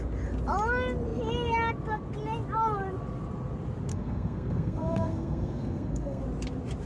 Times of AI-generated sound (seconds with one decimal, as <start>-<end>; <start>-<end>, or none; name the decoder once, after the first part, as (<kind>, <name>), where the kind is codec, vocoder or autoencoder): 3.9-6.2 (codec, SNAC)